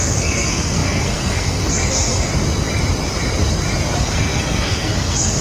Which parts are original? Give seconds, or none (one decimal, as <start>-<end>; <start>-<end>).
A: 2.3-4.0

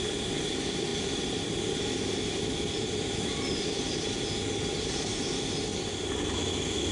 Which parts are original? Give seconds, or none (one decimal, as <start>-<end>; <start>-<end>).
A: 0.0-6.9

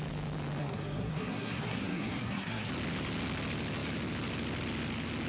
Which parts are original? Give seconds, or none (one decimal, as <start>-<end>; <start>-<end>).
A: 0.0-0.6; 2.7-5.3

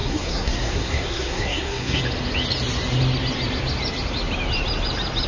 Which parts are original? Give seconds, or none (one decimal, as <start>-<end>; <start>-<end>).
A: 2.0-5.3

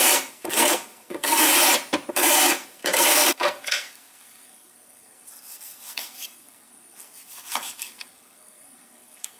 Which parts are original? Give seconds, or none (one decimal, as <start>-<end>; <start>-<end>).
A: 1.5-2.1

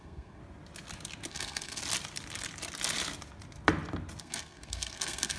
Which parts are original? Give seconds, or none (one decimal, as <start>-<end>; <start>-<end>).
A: 0.4-1.3; 1.8-4.2

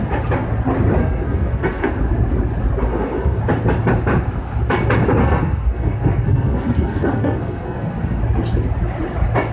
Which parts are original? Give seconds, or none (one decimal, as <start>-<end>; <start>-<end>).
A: 0.0-1.0; 1.9-2.9; 3.4-5.2; 8.2-9.5